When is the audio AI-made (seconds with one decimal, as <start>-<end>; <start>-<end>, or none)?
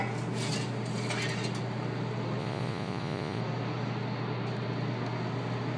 2.4-3.4